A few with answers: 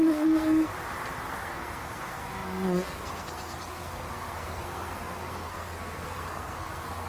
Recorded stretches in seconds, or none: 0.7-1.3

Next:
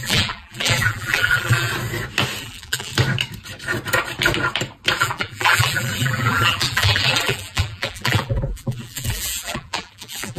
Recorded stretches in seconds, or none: 1.7-2.4; 2.9-5.0

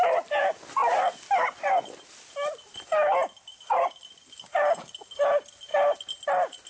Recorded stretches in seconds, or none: 0.0-6.7

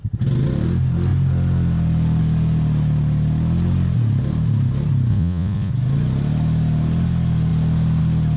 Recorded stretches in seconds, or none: 0.0-5.1; 5.7-8.4

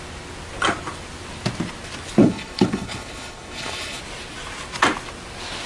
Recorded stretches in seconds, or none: 0.0-2.2; 4.0-5.7

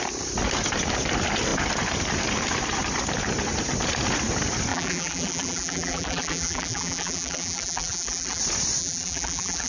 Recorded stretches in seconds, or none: 0.0-4.7; 8.4-8.8

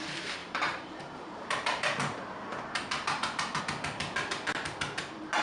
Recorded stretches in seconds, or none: 0.0-0.4; 3.6-5.4